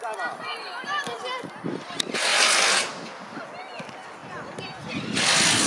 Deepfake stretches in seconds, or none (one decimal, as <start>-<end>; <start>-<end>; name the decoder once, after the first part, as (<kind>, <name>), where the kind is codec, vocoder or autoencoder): none